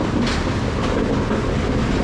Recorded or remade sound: recorded